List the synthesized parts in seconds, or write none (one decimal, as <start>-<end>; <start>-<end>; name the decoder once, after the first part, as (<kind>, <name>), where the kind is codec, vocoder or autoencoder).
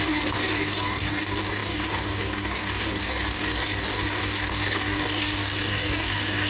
0.0-6.5 (codec, DAC)